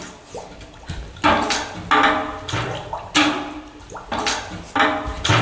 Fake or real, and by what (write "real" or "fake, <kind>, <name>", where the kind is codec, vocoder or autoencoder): real